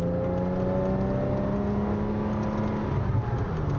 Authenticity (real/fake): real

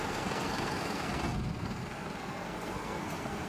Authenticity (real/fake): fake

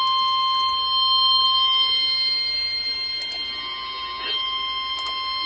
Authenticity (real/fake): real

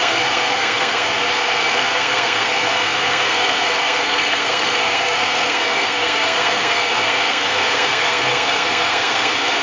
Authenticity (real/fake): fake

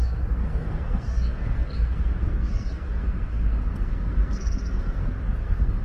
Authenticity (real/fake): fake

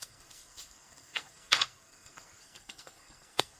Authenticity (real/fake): fake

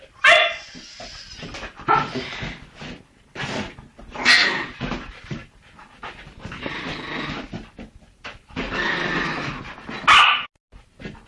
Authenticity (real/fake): real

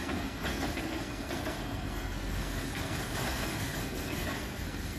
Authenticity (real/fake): fake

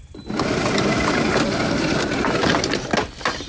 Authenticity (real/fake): real